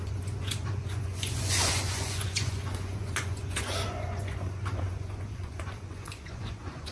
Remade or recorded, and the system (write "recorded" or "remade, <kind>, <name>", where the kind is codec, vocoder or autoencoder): remade, vocoder, Vocos